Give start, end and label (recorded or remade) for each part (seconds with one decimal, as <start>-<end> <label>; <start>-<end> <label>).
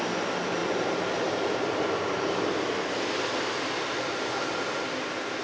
0.0-5.4 recorded